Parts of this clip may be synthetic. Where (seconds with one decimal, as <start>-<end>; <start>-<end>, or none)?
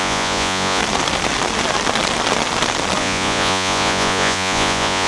0.0-0.8; 3.0-5.1